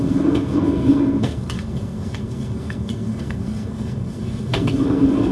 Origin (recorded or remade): remade